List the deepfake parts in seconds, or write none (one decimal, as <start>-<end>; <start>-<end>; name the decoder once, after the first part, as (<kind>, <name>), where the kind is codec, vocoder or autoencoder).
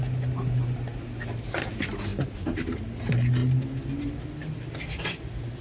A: none